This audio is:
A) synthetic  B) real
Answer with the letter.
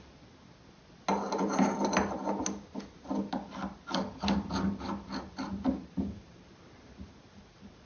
B